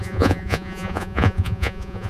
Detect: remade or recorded remade